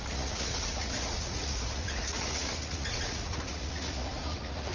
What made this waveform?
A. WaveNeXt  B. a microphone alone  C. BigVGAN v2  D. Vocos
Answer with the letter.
D